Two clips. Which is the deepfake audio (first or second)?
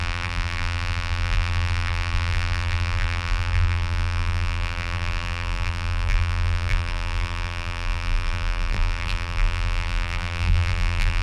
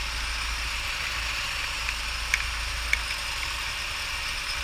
first